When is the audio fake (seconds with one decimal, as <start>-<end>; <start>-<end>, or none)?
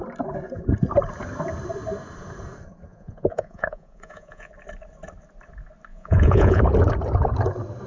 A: 2.9-4.5; 5.9-6.6